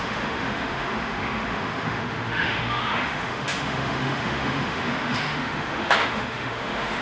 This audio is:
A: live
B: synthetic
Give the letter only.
B